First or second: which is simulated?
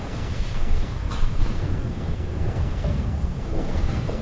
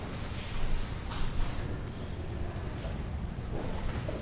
first